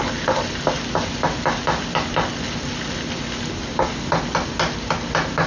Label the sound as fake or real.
real